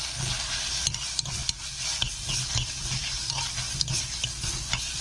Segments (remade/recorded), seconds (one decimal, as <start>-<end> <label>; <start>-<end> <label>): 0.0-5.0 recorded